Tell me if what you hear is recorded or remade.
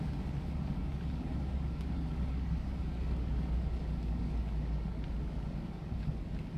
remade